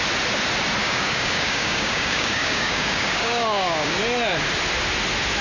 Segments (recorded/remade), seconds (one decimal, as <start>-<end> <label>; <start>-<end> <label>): 0.0-0.8 recorded; 0.8-4.0 remade; 4.0-5.4 recorded